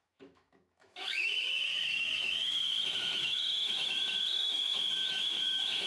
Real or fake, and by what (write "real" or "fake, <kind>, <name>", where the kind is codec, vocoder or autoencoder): fake, autoencoder, DAC-VAE